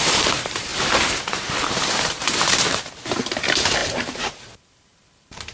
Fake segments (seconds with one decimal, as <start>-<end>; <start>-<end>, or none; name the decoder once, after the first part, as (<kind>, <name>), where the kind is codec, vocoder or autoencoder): 0.0-5.5 (vocoder, BigVGAN v2)